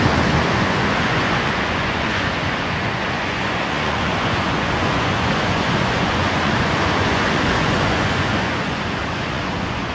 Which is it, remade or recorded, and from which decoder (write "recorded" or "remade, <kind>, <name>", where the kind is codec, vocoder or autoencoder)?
remade, vocoder, Vocos